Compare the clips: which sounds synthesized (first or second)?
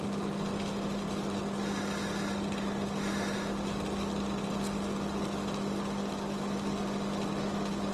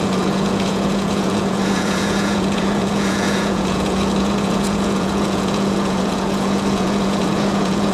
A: second